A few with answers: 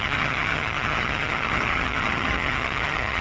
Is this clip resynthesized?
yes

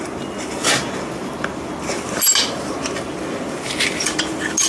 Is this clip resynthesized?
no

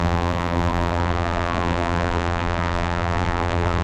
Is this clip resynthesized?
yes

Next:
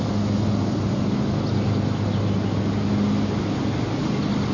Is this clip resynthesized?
no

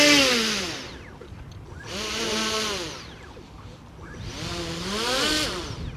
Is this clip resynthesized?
no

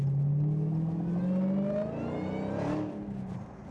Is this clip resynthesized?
no